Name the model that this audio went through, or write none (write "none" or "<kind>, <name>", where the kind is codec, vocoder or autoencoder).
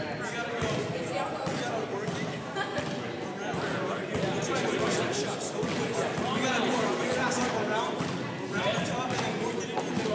none